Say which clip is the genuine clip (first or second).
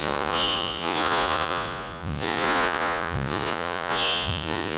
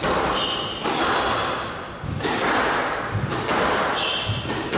second